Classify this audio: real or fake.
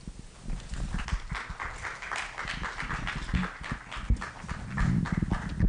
real